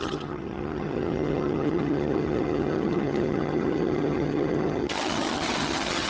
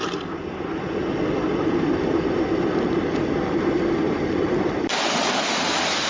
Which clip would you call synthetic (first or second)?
first